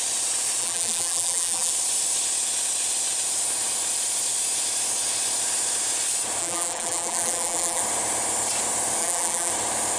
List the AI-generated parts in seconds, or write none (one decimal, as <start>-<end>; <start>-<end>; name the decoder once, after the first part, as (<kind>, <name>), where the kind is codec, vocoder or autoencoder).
0.6-1.7 (vocoder, BigVGAN v2); 6.4-7.8; 9.0-9.5